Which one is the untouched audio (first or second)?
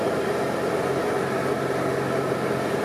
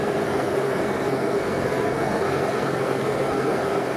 first